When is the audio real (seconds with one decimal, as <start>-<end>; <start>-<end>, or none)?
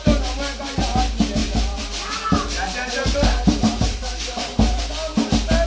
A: 0.0-1.4; 4.8-5.7